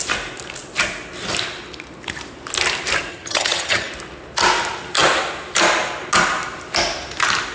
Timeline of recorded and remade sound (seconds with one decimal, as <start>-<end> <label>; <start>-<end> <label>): 0.0-3.1 recorded; 3.1-3.9 remade; 3.9-7.5 recorded